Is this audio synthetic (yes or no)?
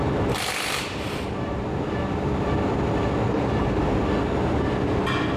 no